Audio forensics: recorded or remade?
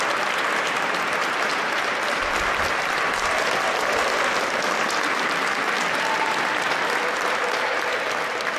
recorded